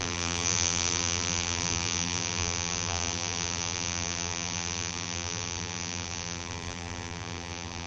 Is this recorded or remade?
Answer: remade